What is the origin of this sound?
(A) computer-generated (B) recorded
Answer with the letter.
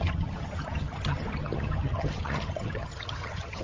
A